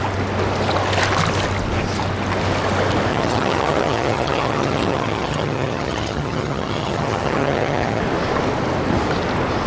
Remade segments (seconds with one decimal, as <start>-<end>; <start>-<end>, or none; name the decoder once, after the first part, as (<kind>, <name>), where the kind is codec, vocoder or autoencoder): 3.1-8.0 (vocoder, HiFi-GAN)